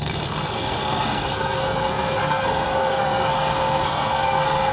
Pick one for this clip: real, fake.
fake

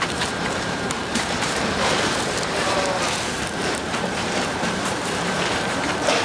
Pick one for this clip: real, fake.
fake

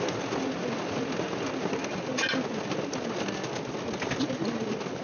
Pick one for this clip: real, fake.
real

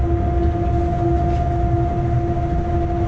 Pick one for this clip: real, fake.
real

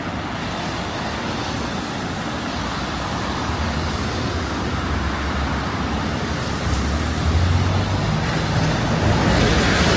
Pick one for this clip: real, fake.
real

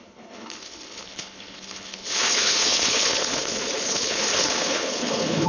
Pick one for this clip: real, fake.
fake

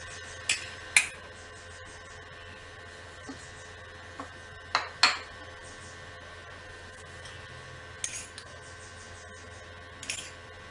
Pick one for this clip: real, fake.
real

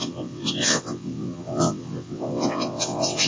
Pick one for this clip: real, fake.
fake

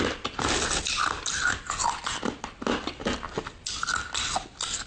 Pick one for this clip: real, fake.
real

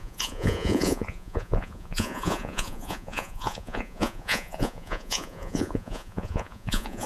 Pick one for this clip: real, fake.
fake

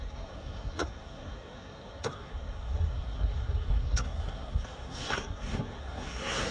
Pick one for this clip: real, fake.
fake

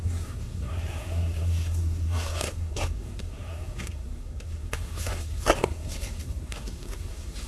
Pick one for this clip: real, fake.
fake